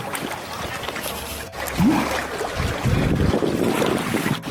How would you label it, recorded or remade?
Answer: recorded